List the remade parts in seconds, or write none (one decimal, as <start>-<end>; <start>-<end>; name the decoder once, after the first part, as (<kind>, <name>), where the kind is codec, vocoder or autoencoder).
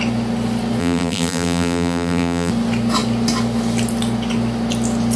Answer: 0.8-2.5 (vocoder, BigVGAN v2)